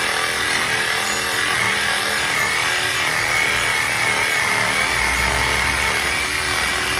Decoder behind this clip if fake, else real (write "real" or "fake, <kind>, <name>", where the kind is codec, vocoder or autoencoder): real